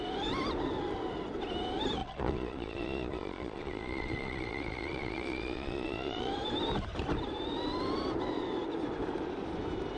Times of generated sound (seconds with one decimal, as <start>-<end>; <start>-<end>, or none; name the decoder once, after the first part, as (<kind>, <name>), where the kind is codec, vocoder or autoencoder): 2.0-6.3 (vocoder, Vocos)